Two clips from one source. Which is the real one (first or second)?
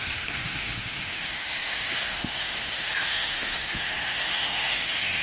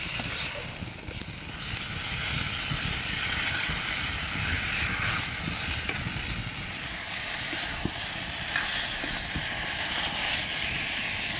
second